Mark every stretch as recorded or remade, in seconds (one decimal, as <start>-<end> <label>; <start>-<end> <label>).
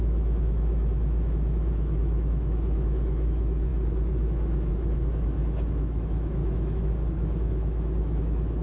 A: 0.0-8.6 remade